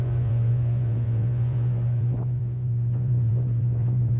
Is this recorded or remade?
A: remade